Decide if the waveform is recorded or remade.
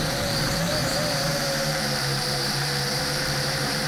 remade